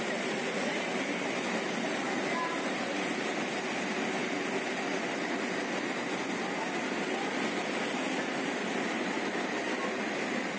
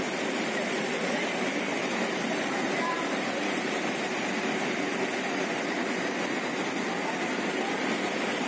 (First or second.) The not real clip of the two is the second